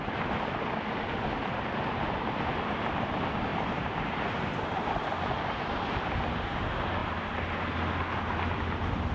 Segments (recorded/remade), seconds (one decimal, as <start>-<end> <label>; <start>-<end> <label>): 0.0-3.5 recorded; 3.5-5.0 remade; 5.0-9.1 recorded